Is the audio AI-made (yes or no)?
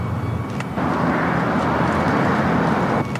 no